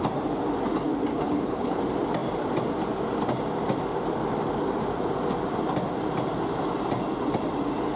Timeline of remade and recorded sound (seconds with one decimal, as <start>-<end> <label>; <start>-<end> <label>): 0.0-1.1 recorded; 1.1-1.8 remade; 1.8-8.0 recorded